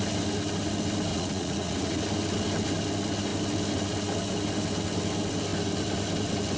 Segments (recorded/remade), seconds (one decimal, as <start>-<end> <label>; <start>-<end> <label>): 0.0-1.1 recorded; 1.1-2.0 remade; 2.0-6.6 recorded

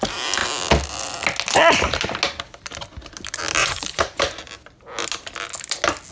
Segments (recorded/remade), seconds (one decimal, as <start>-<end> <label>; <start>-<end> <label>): 0.0-3.6 recorded; 3.6-4.2 remade; 4.2-6.1 recorded